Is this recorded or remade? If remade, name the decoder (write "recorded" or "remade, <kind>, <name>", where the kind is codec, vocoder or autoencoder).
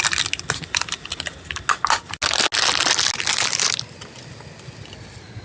recorded